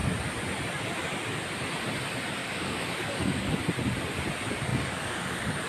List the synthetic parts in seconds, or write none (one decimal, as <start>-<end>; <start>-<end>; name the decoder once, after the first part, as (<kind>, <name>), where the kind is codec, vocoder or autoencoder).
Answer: 2.4-3.5 (codec, DAC); 4.7-5.7